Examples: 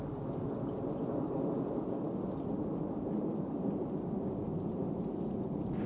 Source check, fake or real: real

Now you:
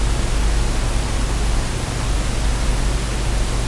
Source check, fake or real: real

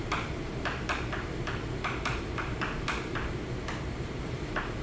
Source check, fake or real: fake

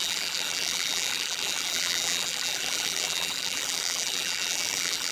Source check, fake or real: fake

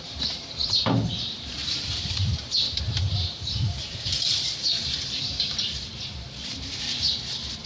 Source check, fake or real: fake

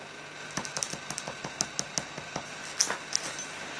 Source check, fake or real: real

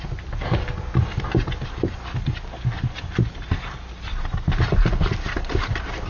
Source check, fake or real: real